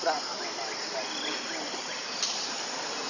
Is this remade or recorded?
recorded